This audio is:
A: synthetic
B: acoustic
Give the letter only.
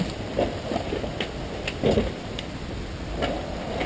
B